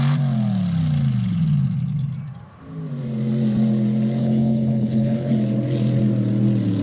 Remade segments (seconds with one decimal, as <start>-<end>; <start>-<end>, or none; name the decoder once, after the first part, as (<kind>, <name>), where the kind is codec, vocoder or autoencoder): 4.2-5.3 (codec, HILCodec)